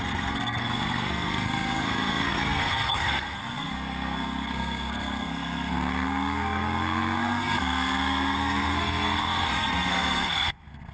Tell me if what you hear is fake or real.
fake